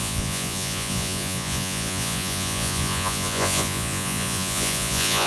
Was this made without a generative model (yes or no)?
no